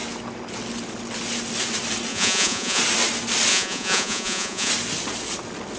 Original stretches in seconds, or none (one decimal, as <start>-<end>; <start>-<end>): 0.0-2.1; 2.8-3.5; 4.7-5.8